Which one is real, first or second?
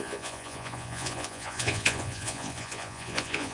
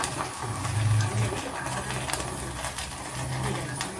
second